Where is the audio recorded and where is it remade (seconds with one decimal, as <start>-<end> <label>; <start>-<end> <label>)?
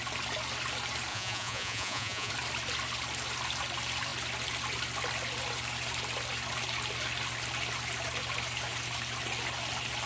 0.0-1.1 recorded; 1.1-2.3 remade; 2.3-10.1 recorded